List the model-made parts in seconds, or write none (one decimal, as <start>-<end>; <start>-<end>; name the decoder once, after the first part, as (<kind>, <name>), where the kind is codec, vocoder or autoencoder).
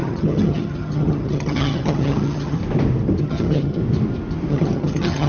0.0-2.6 (vocoder, HiFi-GAN); 3.2-3.8; 4.5-5.3